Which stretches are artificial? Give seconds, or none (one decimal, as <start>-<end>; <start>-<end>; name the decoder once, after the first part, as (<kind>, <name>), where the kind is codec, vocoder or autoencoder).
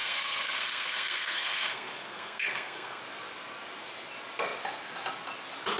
0.0-3.0 (codec, SNAC)